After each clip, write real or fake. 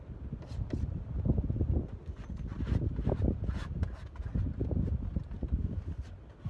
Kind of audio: real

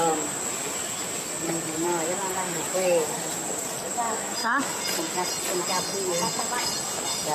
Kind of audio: real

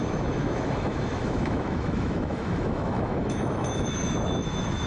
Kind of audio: fake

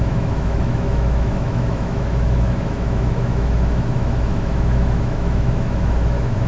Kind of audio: fake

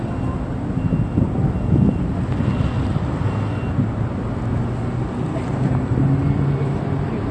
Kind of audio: real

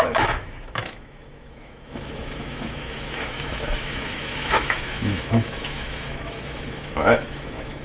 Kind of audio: fake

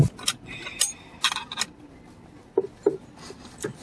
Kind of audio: real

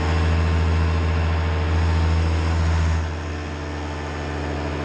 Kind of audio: real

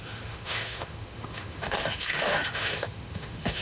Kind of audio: fake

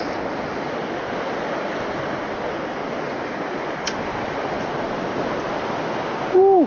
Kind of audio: real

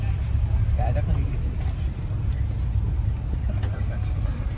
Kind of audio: real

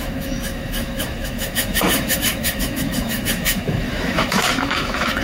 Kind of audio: fake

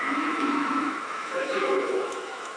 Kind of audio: fake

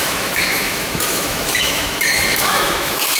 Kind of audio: fake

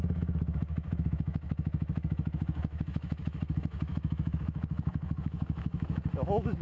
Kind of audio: fake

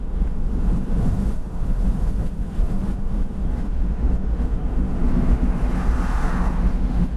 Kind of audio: fake